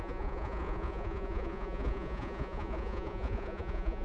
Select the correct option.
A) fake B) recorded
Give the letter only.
A